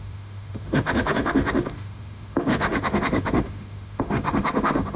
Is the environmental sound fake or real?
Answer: fake